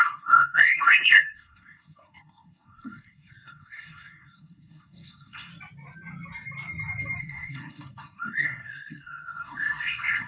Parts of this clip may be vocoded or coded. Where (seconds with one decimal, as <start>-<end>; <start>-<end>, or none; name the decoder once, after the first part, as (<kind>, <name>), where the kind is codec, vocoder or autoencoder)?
0.0-5.5 (codec, SNAC); 7.2-10.3